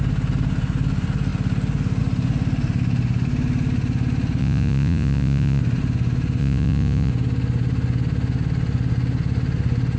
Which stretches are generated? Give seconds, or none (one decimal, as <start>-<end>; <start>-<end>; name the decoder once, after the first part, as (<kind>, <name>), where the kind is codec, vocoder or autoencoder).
4.4-5.6 (vocoder, Vocos); 6.4-7.1